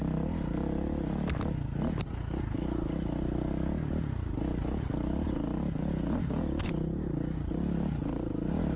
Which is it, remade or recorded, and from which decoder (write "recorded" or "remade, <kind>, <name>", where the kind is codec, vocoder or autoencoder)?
recorded